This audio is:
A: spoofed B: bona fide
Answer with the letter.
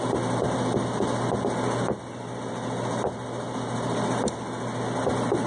B